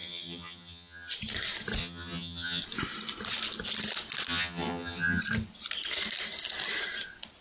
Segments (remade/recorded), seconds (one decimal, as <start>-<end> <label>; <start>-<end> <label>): 0.0-1.1 remade; 1.1-1.8 recorded; 1.8-2.6 remade; 2.6-4.3 recorded; 4.3-5.2 remade; 5.2-7.4 recorded